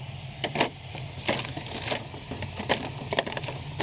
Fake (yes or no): no